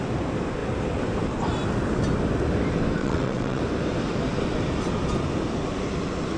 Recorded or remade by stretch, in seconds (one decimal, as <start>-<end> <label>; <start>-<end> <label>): 0.0-3.0 recorded; 3.0-3.6 remade; 3.6-6.4 recorded